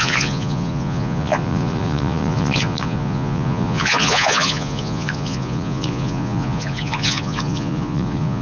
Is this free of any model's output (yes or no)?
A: no